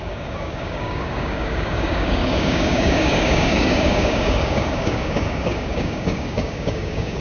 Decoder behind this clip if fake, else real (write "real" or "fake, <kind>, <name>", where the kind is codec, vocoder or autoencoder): fake, codec, DAC